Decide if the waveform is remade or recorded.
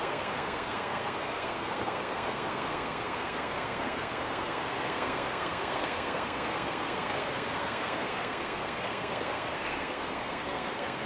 remade